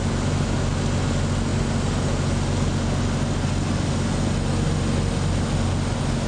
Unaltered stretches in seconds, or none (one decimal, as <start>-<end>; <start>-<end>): 0.0-6.3